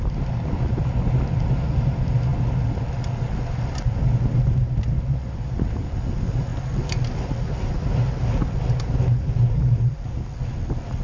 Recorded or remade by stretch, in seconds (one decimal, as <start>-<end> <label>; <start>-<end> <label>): 0.0-11.0 recorded